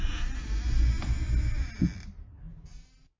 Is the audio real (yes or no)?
yes